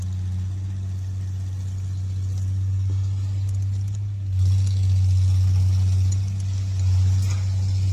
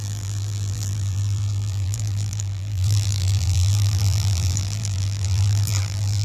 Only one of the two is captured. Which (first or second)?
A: first